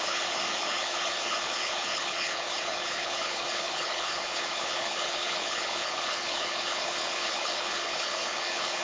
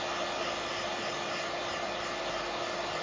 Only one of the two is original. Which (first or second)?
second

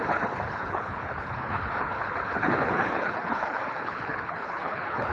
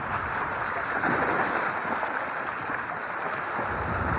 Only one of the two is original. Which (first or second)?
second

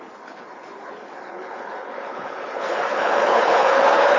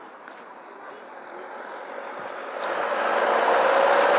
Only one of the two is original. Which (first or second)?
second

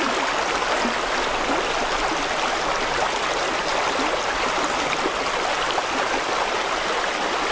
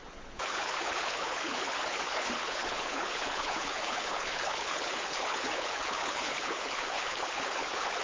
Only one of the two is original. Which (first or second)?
first